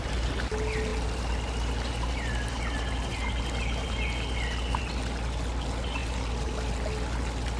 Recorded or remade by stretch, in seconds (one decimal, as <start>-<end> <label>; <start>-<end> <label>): 0.0-0.9 recorded; 0.9-2.5 remade; 2.5-6.0 recorded; 6.0-6.7 remade; 6.7-7.6 recorded